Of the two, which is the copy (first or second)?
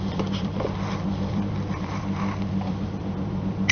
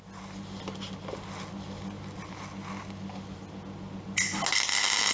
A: first